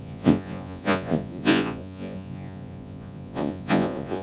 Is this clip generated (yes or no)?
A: yes